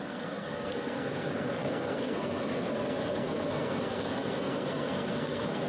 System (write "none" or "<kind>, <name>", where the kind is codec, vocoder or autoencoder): codec, SNAC